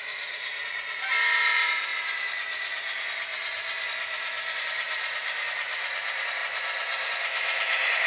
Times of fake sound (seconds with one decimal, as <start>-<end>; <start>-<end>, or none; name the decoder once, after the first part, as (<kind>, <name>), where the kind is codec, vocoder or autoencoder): 0.0-1.9 (vocoder, BigVGAN v2); 4.5-8.1